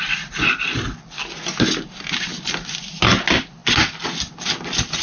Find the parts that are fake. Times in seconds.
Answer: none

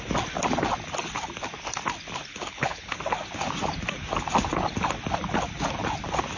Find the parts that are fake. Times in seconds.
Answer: 2.3-3.0 (codec, HILCodec)

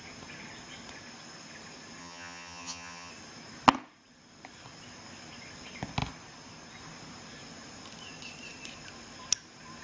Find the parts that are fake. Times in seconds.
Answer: 2.0-3.1 (vocoder, HiFi-GAN)

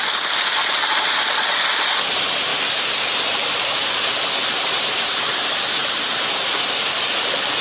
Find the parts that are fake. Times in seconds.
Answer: 2.5-4.9 (vocoder, BigVGAN v2); 5.8-7.0